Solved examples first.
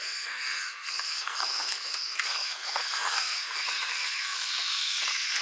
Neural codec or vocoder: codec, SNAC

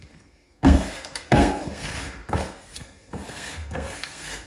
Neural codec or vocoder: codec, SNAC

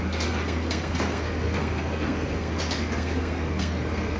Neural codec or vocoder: codec, SNAC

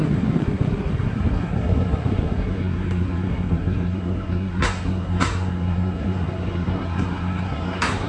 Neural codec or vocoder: codec, SNAC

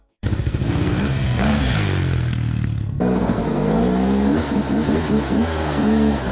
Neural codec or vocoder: codec, SNAC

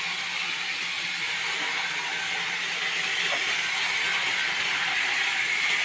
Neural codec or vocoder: none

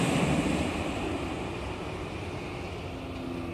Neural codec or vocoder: none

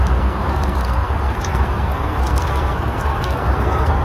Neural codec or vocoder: codec, SNAC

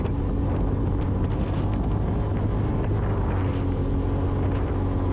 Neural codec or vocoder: none